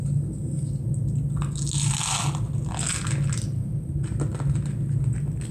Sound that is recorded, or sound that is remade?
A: recorded